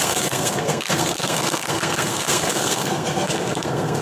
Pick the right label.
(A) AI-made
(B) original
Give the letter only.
A